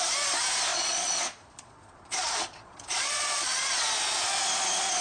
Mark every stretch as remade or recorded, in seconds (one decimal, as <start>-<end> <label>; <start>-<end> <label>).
0.0-0.7 recorded; 0.7-3.7 remade; 3.7-5.0 recorded